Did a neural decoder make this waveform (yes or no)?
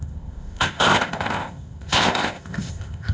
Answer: yes